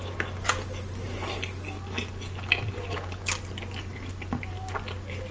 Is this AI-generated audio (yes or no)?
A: no